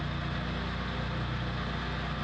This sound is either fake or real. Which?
real